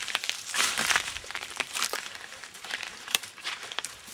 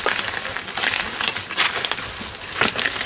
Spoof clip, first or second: first